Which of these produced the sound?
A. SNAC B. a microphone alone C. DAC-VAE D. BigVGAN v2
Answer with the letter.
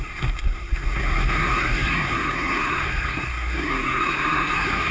A